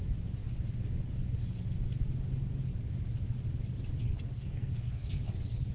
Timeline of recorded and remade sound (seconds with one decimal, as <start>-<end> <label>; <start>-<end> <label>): 0.0-4.0 recorded; 4.0-5.7 remade